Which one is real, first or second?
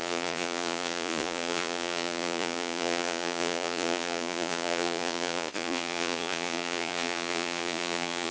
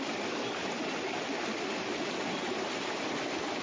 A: second